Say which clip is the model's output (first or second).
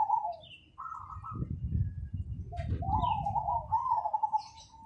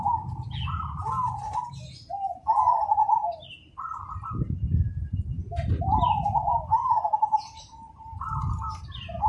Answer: second